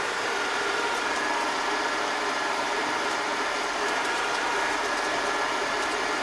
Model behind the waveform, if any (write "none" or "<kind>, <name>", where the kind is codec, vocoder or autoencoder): vocoder, BigVGAN v2